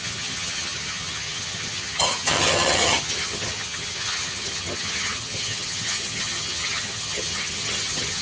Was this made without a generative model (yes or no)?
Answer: no